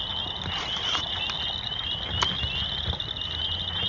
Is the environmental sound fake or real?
real